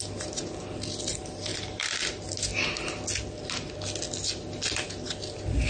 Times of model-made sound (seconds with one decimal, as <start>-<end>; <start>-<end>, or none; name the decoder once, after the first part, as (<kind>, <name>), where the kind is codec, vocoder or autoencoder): 1.5-2.3 (vocoder, BigVGAN v2)